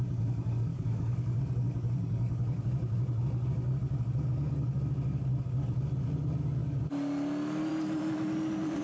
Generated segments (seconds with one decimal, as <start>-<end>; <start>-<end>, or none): 0.7-1.4